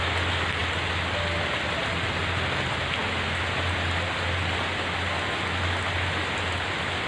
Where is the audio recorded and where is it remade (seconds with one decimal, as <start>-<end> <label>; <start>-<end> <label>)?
0.0-7.1 recorded